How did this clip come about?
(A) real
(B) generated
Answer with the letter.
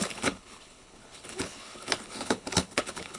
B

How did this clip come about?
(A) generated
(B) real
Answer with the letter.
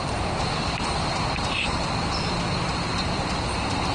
B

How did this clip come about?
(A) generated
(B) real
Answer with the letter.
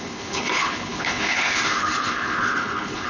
A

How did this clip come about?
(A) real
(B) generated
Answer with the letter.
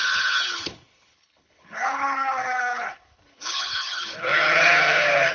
B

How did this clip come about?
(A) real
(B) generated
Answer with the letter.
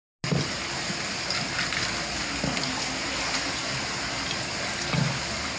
A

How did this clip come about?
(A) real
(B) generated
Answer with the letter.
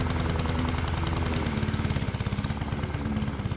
A